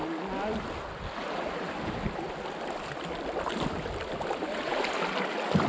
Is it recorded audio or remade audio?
recorded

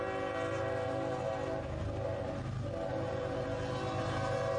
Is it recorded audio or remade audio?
recorded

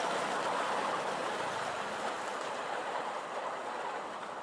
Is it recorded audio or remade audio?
recorded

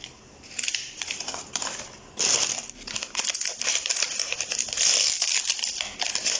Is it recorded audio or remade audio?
recorded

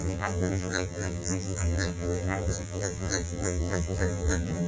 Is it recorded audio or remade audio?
remade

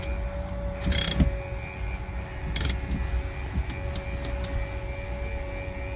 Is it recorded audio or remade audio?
recorded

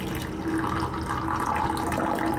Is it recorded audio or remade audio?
recorded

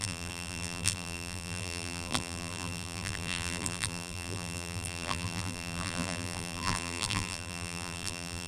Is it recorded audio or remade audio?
remade